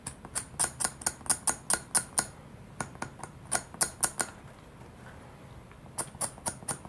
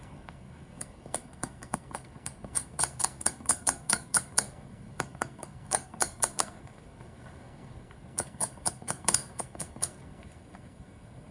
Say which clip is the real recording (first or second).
first